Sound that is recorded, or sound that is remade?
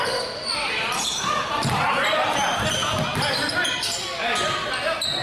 recorded